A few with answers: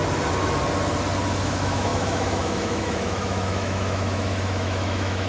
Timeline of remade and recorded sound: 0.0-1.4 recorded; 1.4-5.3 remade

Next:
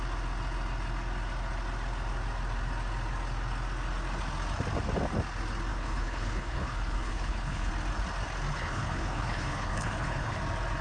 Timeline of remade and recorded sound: 0.0-5.7 recorded; 5.7-7.7 remade; 7.7-8.5 recorded; 8.5-10.4 remade; 10.4-10.8 recorded

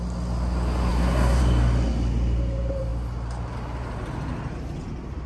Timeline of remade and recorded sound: 0.0-0.9 recorded; 0.9-1.4 remade; 1.4-5.3 recorded